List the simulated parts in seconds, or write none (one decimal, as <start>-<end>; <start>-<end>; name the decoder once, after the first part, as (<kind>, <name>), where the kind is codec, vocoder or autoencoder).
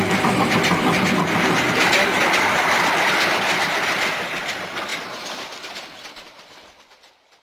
0.0-7.4 (vocoder, BigVGAN v2)